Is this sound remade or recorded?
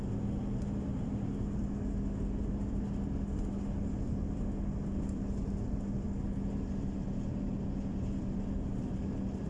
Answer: recorded